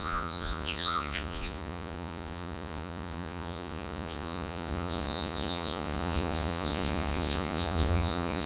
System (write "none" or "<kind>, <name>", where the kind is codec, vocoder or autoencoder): vocoder, Vocos